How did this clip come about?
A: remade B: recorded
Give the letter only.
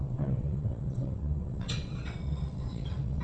A